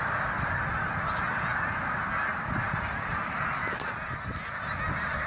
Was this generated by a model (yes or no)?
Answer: no